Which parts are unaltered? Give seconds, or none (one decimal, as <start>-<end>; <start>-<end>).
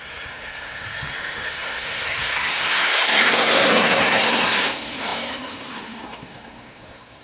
none